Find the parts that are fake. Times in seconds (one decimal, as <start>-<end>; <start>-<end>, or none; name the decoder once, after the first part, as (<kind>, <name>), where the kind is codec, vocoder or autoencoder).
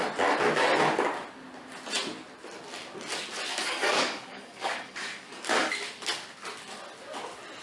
3.5-5.7 (codec, DAC)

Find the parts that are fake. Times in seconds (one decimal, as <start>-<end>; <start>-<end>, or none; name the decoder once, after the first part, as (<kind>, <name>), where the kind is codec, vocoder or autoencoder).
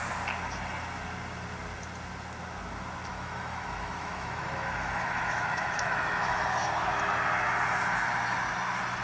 3.1-6.4 (autoencoder, DAC-VAE)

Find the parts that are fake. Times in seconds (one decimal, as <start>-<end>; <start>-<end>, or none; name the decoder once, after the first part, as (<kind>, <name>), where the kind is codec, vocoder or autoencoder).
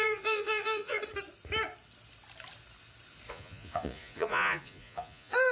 0.0-1.0 (vocoder, Vocos); 3.3-5.5